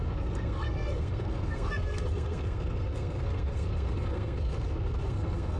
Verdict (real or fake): fake